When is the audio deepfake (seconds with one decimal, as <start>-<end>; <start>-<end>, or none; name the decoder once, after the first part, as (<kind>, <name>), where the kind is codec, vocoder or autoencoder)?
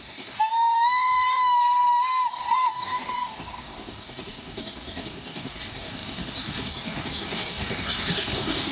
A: 0.0-1.6 (codec, DAC); 2.3-8.7